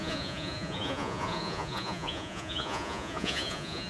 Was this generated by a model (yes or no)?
yes